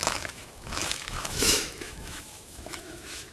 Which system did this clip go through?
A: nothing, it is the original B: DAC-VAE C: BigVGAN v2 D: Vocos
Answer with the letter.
B